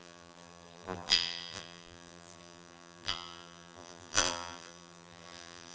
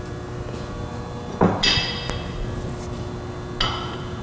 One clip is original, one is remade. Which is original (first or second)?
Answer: second